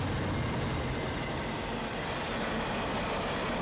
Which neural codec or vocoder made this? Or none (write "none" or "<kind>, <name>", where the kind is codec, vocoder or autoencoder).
none